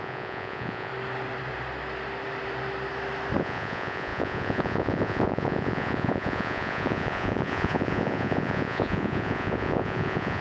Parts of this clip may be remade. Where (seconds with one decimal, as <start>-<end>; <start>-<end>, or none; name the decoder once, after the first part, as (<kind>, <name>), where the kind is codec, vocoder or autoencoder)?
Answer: 0.0-0.9 (vocoder, Vocos); 3.4-10.4